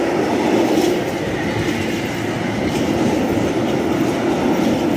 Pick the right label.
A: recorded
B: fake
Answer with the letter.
A